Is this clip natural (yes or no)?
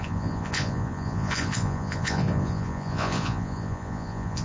no